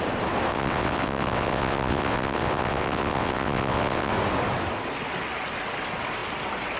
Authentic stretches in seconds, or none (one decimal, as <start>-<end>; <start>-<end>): 0.0-0.5; 4.1-6.8